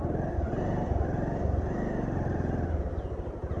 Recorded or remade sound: recorded